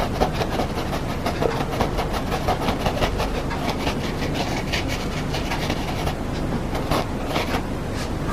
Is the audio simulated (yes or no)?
no